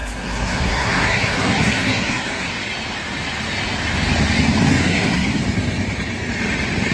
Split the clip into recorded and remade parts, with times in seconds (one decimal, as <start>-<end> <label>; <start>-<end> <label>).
0.0-2.6 remade; 2.6-4.8 recorded; 4.8-5.4 remade; 5.4-6.9 recorded